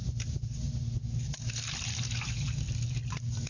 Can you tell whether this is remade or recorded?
recorded